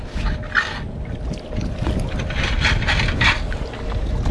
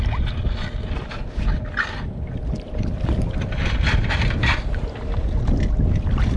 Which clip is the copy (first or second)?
second